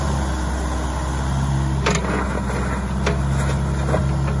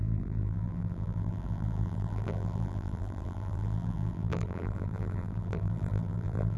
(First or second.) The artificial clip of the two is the second